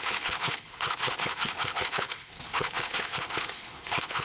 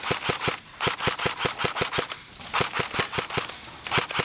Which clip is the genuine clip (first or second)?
second